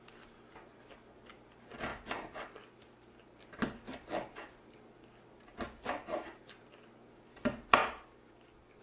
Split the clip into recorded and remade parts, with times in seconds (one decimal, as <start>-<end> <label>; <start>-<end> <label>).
0.0-8.8 recorded